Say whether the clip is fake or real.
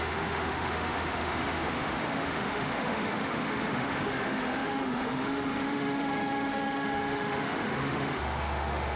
fake